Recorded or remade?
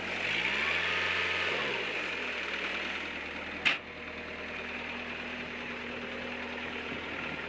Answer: recorded